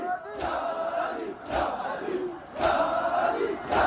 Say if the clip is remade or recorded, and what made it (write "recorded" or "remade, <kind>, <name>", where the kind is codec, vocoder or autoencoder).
recorded